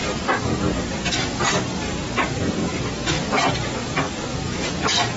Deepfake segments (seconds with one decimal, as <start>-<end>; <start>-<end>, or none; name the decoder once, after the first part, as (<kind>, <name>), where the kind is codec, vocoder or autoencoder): none